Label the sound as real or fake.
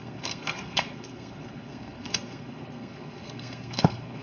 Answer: fake